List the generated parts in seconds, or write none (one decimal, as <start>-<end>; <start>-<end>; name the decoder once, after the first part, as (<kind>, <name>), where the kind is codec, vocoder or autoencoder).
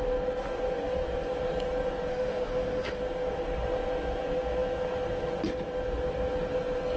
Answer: 2.1-3.0 (autoencoder, DAC-VAE)